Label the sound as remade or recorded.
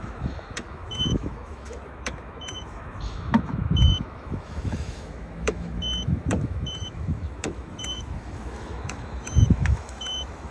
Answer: remade